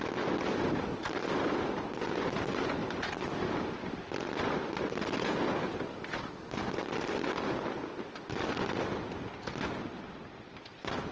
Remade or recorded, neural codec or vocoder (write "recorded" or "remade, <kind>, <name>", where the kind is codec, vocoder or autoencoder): recorded